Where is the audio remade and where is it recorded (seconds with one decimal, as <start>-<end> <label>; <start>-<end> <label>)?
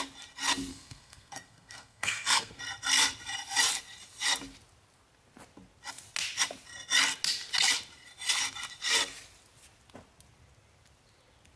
0.0-0.7 recorded; 0.7-2.6 remade; 2.6-11.6 recorded